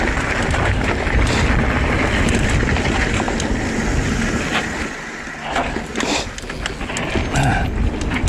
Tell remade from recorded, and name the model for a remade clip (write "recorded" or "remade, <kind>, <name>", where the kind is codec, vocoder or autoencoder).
recorded